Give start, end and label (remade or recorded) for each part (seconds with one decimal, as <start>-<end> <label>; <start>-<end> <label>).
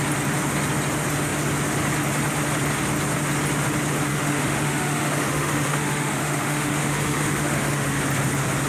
0.0-4.1 recorded; 4.1-8.0 remade; 8.0-8.7 recorded